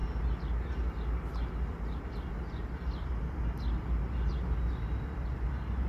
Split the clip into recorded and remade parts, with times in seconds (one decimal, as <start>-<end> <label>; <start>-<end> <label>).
0.0-5.9 recorded